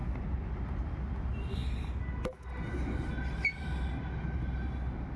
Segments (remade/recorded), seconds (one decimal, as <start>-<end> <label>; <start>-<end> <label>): 0.0-5.2 recorded